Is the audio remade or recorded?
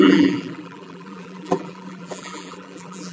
remade